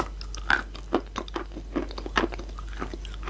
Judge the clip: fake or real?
real